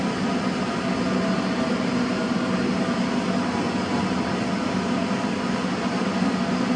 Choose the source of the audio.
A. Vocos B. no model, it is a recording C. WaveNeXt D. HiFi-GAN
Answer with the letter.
B